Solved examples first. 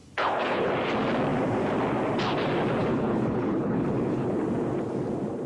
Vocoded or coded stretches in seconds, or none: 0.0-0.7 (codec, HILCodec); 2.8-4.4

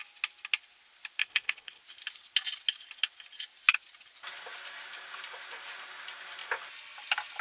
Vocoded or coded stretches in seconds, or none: 1.2-1.8 (codec, HILCodec)

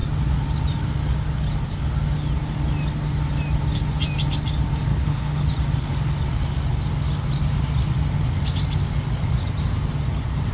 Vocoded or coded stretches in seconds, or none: 4.9-5.5 (codec, HILCodec)

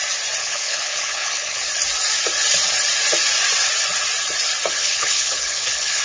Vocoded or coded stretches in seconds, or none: 0.4-1.7 (codec, HILCodec); 4.8-6.0

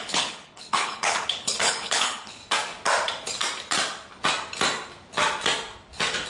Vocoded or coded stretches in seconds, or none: 0.0-2.4 (codec, HILCodec)

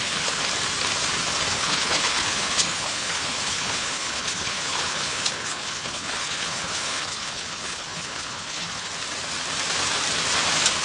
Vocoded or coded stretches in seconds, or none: 0.0-0.4 (codec, HILCodec); 1.5-8.9

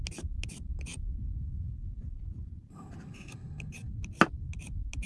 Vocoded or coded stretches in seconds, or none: none

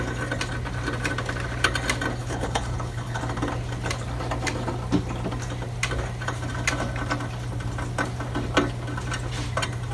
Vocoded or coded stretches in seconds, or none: 2.2-3.2 (codec, HILCodec)